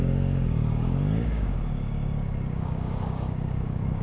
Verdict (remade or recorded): remade